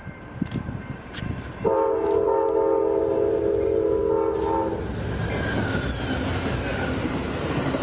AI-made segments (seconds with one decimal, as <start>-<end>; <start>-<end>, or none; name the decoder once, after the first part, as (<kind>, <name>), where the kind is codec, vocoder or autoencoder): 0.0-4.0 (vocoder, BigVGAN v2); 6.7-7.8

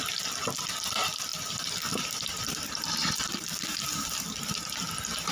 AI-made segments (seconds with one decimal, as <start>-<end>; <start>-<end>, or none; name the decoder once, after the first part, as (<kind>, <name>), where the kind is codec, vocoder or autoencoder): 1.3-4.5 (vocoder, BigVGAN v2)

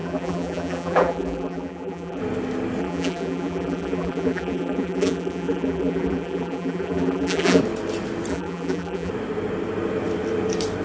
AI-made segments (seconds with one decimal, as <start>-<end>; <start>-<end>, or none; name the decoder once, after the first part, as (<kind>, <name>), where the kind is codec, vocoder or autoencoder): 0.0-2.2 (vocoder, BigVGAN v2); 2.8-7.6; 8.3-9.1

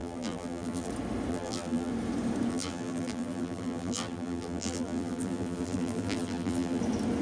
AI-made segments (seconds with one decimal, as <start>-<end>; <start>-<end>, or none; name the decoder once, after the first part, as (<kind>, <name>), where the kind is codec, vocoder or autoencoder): 0.0-0.9 (vocoder, BigVGAN v2); 1.3-1.9; 2.5-6.8

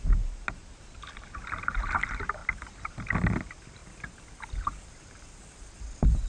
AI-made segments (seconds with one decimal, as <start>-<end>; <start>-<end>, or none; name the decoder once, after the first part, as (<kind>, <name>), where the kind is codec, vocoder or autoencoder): 2.4-2.9 (vocoder, BigVGAN v2)